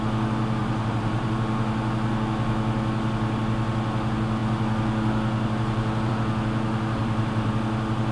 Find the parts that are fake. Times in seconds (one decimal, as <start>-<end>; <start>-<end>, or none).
0.6-1.3; 7.0-7.5